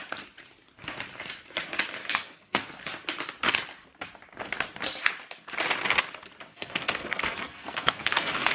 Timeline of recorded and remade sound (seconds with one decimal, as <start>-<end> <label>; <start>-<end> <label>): 0.0-2.0 recorded; 2.0-2.7 remade; 2.7-6.5 recorded; 6.5-8.5 remade